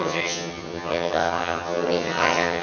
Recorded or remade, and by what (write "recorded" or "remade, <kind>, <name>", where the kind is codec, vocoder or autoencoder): remade, vocoder, HiFi-GAN